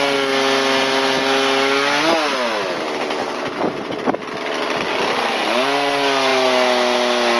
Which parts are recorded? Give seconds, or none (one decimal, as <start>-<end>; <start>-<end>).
0.0-7.4

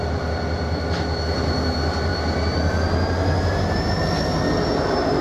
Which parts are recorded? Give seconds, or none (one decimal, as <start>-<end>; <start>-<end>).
0.0-5.2

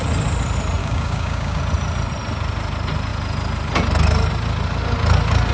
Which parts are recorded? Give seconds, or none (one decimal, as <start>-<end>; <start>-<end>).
0.0-0.8; 1.6-5.5